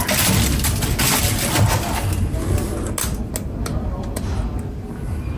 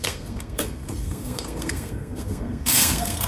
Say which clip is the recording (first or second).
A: first